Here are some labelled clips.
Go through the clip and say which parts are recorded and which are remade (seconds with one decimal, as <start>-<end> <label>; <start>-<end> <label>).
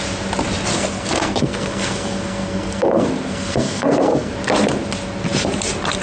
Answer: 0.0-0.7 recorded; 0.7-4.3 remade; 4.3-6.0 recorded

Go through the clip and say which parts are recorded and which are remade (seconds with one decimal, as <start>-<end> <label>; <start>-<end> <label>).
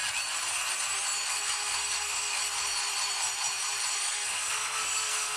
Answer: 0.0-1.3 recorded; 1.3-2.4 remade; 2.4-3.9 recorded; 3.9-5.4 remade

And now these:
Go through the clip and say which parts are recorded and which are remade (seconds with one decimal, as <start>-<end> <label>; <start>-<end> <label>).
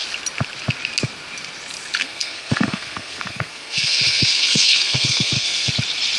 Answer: 0.0-2.0 recorded; 2.0-5.7 remade; 5.7-6.2 recorded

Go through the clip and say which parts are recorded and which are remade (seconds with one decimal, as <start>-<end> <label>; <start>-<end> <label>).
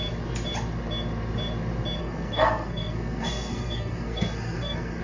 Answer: 0.0-2.0 recorded; 2.0-5.0 remade